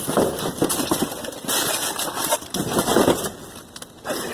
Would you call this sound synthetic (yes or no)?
no